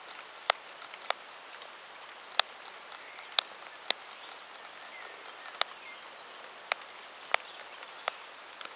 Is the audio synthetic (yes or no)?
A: no